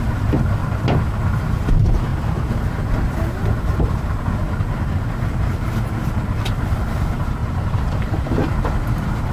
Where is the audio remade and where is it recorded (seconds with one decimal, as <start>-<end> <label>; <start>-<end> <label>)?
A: 0.0-2.1 recorded; 2.1-2.6 remade; 2.6-4.4 recorded; 4.4-5.1 remade; 5.1-7.4 recorded; 7.4-8.3 remade; 8.3-9.3 recorded